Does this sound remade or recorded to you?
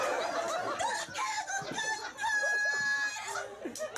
recorded